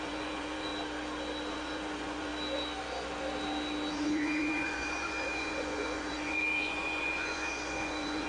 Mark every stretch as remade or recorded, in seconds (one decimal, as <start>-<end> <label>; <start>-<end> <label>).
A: 0.0-0.7 remade; 0.7-1.5 recorded; 1.5-2.3 remade; 2.3-3.9 recorded; 3.9-8.3 remade